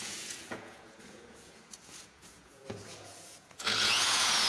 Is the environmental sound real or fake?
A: fake